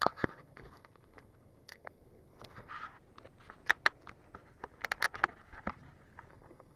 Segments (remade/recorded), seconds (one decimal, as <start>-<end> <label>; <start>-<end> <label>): 0.0-2.7 remade; 2.7-6.3 recorded; 6.3-6.8 remade